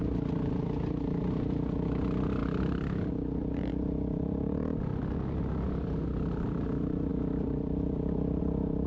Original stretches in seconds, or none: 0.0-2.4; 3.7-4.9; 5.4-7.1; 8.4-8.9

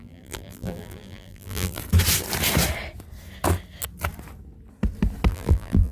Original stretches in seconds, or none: 1.8-5.3

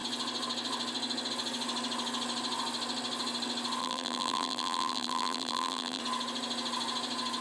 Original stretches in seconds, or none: 0.0-3.8; 6.0-7.4

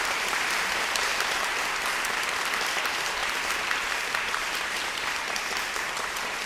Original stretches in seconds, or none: 1.1-2.8

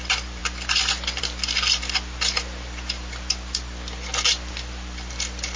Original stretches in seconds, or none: 0.4-1.2; 1.8-4.5